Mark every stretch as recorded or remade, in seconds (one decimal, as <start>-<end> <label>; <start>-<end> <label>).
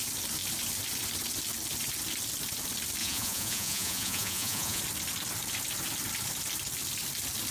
0.0-3.0 recorded; 3.0-4.8 remade; 4.8-7.5 recorded